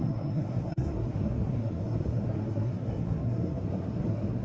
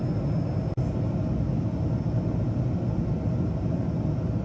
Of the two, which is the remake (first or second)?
first